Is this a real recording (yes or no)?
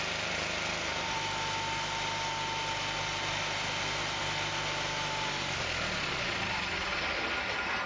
yes